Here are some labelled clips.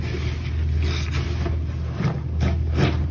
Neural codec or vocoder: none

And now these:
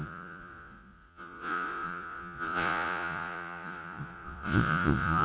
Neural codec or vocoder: vocoder, Vocos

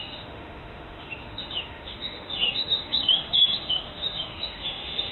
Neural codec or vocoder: autoencoder, DAC-VAE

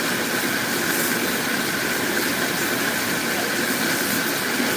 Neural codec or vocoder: none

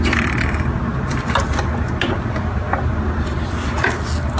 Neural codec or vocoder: none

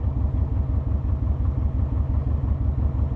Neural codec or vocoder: none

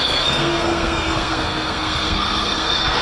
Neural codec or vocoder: codec, SNAC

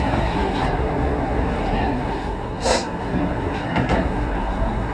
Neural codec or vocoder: codec, SNAC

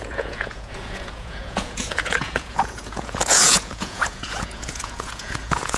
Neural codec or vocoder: vocoder, Vocos